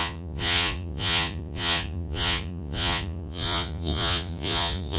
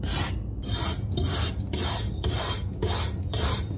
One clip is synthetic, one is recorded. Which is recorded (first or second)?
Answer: second